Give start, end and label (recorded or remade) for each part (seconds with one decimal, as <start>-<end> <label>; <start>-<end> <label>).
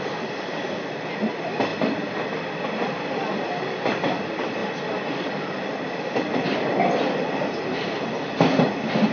0.0-9.1 remade